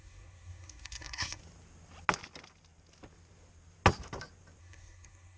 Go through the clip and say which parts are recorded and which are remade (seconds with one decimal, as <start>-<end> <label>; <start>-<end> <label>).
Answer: 0.0-1.4 remade; 1.4-4.6 recorded; 4.6-5.4 remade

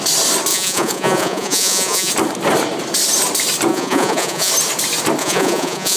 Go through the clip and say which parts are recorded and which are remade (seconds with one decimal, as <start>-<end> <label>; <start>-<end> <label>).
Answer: 0.0-0.5 recorded; 0.5-2.1 remade; 2.1-3.7 recorded; 3.7-4.5 remade; 4.5-5.2 recorded; 5.2-6.0 remade

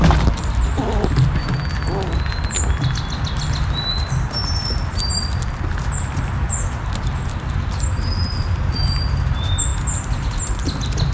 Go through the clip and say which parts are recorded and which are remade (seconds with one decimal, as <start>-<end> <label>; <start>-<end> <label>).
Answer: 0.0-11.1 recorded

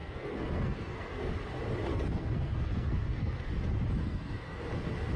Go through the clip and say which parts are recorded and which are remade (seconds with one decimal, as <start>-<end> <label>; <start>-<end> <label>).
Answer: 0.0-1.3 remade; 1.3-1.9 recorded; 1.9-3.5 remade; 3.5-4.0 recorded; 4.0-4.6 remade; 4.6-5.2 recorded

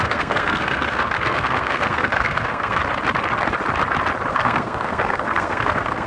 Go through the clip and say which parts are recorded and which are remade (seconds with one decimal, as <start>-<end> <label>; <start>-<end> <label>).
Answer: 0.0-2.8 remade; 2.8-4.3 recorded; 4.3-6.1 remade

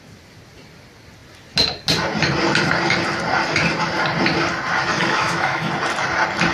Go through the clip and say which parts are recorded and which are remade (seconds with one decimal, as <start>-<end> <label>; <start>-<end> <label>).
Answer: 0.0-4.9 recorded; 4.9-5.7 remade; 5.7-6.5 recorded

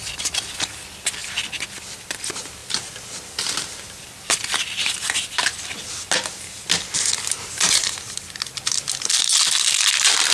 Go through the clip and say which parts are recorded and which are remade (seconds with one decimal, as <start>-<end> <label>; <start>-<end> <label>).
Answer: 0.0-10.3 recorded

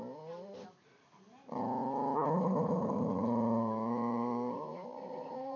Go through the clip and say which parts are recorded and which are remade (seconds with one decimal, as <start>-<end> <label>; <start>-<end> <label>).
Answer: 0.0-1.8 recorded; 1.8-5.6 remade